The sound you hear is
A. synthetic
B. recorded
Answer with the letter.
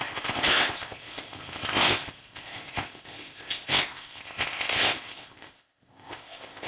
A